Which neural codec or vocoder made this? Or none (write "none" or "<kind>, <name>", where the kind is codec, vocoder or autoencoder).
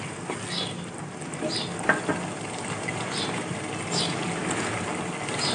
none